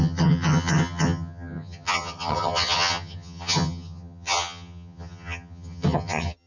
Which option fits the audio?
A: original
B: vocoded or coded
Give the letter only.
B